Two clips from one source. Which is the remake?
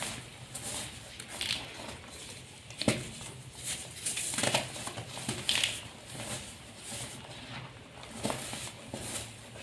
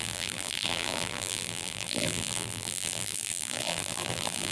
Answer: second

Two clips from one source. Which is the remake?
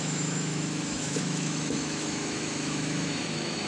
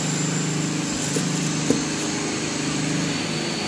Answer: first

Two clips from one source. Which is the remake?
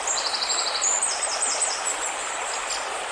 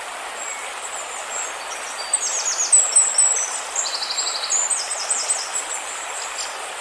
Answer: first